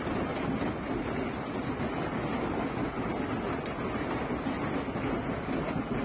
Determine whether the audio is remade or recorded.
recorded